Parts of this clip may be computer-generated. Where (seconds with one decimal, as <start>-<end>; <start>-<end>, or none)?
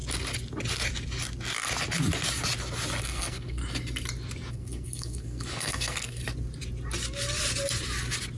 3.0-3.6; 4.5-6.2